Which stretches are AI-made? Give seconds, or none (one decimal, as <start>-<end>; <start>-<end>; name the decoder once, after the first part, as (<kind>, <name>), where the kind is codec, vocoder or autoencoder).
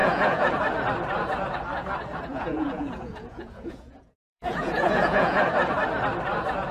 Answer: 0.0-0.5 (vocoder, Vocos); 2.3-5.4